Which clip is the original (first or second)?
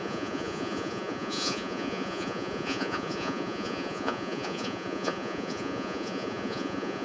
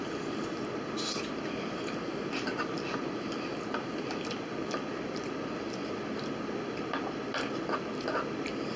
second